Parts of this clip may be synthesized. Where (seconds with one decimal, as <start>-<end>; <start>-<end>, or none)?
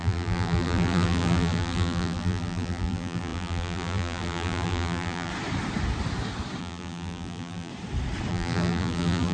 0.0-5.3; 6.6-7.7; 8.3-9.3